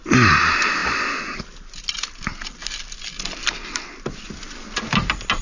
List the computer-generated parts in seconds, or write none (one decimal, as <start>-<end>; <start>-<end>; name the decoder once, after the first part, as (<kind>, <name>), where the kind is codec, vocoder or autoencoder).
none